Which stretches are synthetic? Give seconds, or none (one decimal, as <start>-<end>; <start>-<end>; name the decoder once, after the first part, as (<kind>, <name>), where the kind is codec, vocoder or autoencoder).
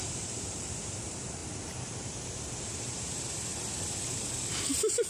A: 0.0-1.4 (vocoder, BigVGAN v2); 2.6-3.5; 4.4-5.1